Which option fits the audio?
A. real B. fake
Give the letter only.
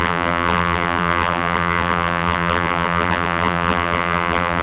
B